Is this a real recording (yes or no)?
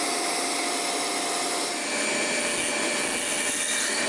yes